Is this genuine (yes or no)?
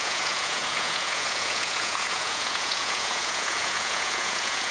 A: no